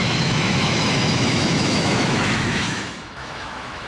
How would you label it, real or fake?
fake